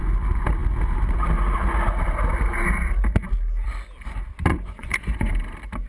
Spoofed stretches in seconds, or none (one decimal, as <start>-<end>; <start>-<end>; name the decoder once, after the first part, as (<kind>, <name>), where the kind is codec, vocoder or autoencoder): 4.5-5.3 (vocoder, Vocos)